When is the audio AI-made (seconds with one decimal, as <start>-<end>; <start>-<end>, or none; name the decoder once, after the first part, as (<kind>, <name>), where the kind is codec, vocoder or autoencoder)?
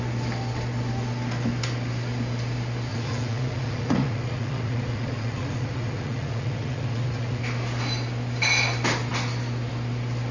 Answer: 2.9-7.4 (vocoder, Vocos)